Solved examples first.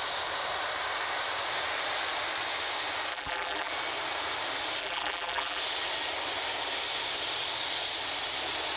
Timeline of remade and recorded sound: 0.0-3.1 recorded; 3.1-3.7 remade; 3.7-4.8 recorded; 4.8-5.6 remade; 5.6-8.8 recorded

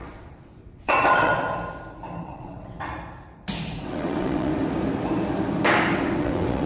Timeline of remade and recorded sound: 0.0-1.3 remade; 1.3-2.2 recorded; 2.2-2.9 remade; 2.9-3.8 recorded; 3.8-4.5 remade; 4.5-6.2 recorded; 6.2-6.7 remade